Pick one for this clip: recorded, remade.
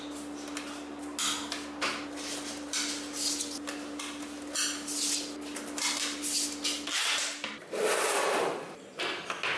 recorded